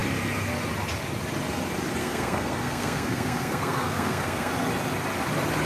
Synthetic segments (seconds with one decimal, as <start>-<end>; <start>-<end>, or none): 2.0-4.5